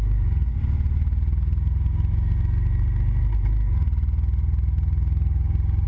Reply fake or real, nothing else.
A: real